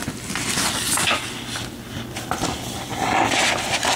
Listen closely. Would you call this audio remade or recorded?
recorded